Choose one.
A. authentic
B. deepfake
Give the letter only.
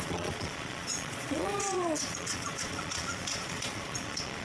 B